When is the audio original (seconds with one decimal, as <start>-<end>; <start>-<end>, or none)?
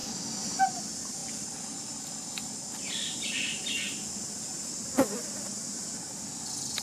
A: 0.0-1.2; 3.8-6.8